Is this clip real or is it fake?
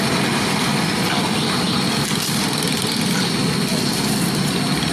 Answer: real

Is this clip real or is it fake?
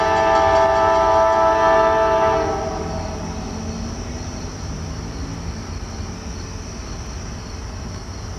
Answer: real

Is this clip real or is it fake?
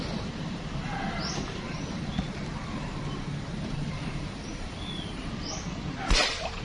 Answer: fake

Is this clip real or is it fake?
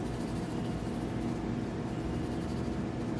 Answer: fake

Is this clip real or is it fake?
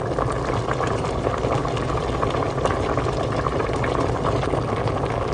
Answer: real